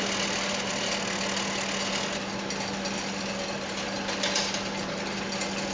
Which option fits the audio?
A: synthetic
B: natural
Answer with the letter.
B